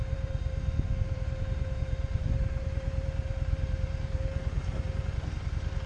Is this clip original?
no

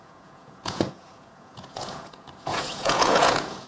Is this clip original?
no